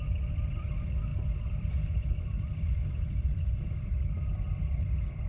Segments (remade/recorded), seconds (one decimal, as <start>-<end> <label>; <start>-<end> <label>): 0.0-5.3 recorded